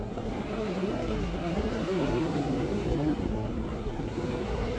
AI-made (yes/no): yes